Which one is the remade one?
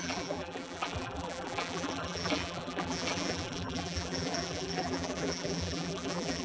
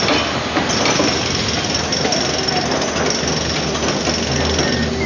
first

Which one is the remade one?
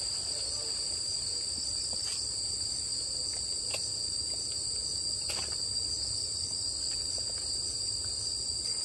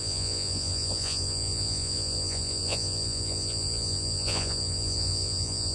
second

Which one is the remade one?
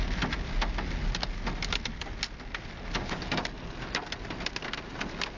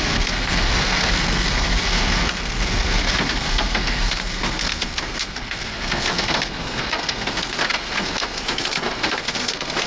second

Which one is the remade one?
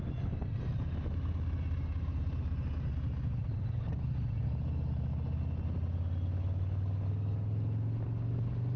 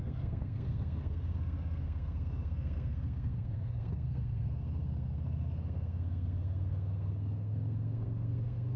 second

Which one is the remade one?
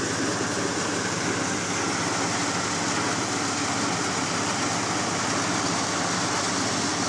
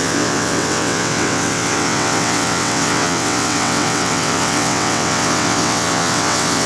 second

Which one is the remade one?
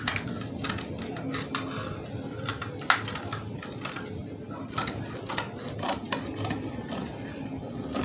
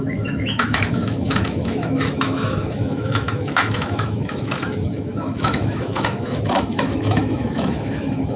second